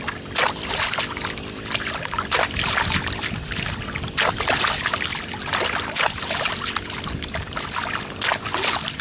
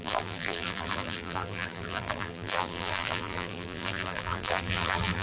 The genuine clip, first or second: first